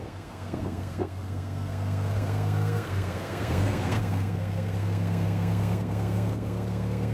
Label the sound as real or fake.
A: fake